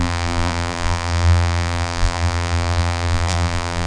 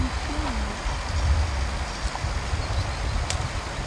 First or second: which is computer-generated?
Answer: first